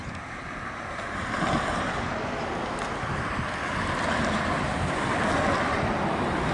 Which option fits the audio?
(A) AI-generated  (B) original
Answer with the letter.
B